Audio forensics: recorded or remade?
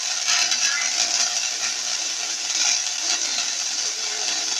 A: remade